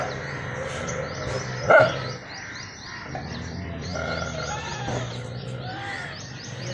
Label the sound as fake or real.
real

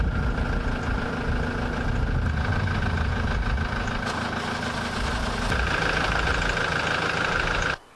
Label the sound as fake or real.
real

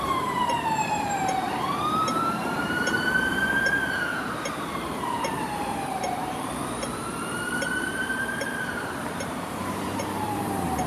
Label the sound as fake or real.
fake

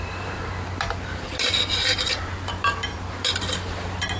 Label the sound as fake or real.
fake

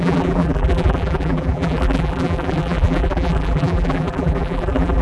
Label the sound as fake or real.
fake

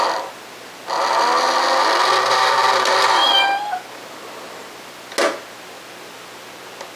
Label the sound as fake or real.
real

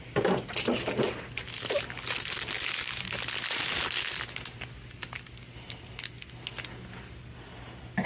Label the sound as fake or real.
real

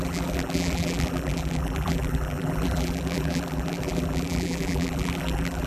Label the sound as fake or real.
fake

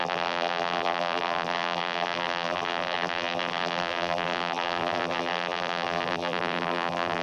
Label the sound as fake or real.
fake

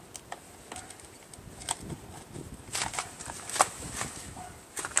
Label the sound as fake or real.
real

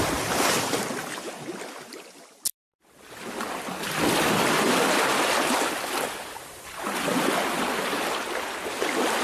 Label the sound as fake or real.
real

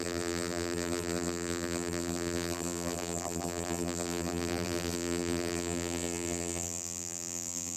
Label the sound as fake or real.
fake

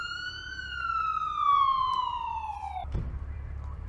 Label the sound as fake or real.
fake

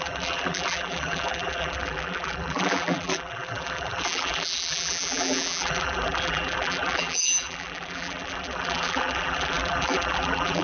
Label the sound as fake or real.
fake